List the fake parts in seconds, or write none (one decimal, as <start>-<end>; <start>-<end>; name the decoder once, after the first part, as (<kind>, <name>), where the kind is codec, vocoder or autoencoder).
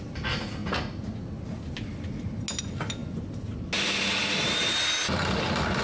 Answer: none